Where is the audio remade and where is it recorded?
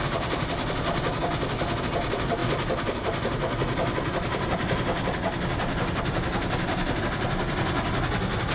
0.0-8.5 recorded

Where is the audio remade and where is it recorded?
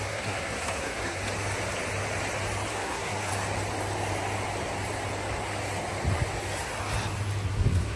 0.0-1.2 remade; 1.2-2.7 recorded; 2.7-3.3 remade; 3.3-7.5 recorded; 7.5-8.0 remade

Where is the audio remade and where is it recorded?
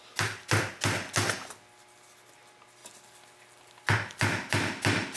0.0-5.2 recorded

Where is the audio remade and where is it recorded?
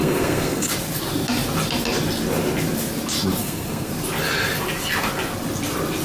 0.0-0.7 remade; 0.7-3.4 recorded; 3.4-3.9 remade; 3.9-6.0 recorded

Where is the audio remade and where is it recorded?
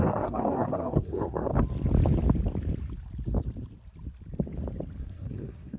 0.0-1.5 remade; 1.5-5.0 recorded; 5.0-5.8 remade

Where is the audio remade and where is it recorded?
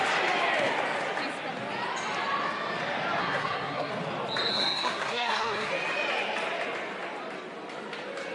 0.0-3.2 recorded; 3.2-3.9 remade; 3.9-4.5 recorded; 4.5-5.7 remade; 5.7-8.3 recorded